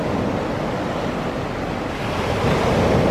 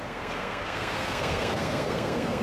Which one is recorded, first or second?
first